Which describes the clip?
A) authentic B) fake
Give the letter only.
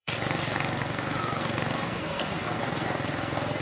B